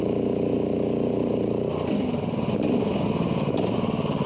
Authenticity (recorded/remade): recorded